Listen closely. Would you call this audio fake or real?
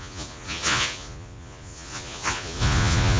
fake